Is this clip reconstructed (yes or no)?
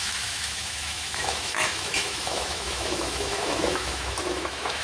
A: yes